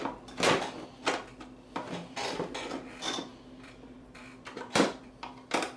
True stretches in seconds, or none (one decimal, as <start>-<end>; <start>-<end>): 0.0-3.3; 5.1-5.8